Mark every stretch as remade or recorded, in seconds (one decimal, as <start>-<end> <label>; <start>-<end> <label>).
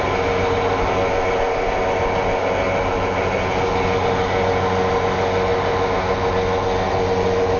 0.0-7.6 recorded